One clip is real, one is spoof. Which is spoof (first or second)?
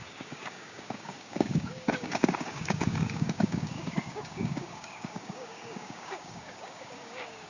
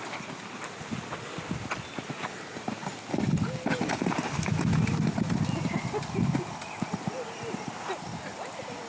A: first